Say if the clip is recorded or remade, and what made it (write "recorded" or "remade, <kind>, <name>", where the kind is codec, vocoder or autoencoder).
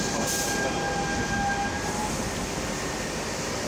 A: recorded